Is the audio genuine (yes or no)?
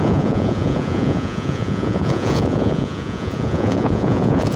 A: no